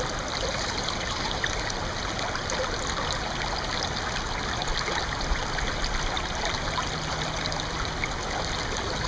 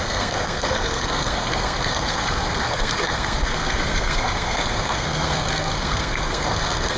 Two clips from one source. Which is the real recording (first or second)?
first